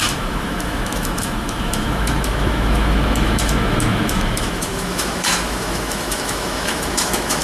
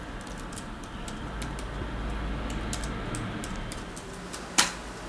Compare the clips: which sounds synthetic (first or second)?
first